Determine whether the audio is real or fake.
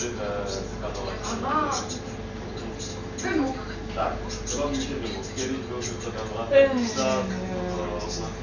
real